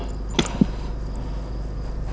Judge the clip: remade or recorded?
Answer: recorded